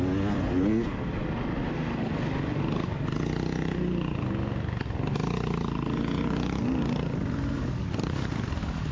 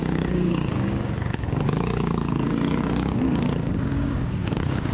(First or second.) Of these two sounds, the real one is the first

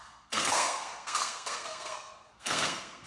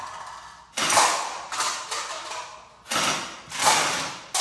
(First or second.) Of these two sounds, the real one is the second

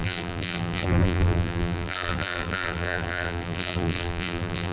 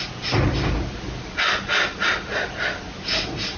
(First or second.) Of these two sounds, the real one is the second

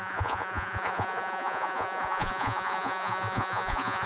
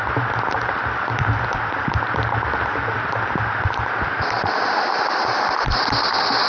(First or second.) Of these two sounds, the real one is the second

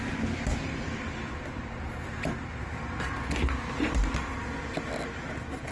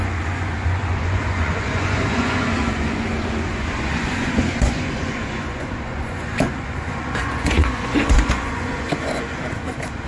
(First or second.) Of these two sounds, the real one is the first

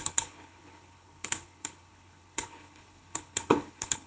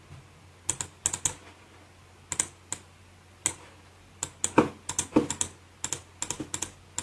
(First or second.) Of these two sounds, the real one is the second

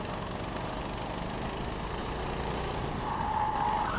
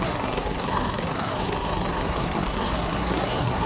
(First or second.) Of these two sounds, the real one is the first